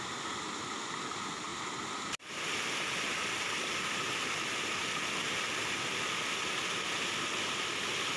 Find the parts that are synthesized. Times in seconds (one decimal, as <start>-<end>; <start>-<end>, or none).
none